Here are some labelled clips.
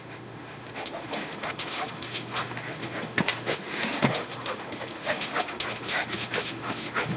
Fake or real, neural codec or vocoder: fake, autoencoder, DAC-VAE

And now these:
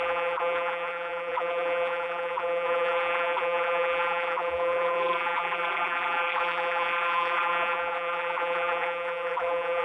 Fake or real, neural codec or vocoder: fake, vocoder, BigVGAN v2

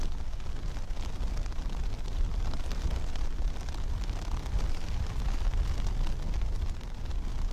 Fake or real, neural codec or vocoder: real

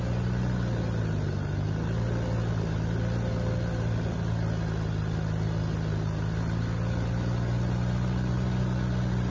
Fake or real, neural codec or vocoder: real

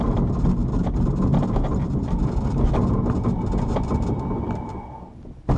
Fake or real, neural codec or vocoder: real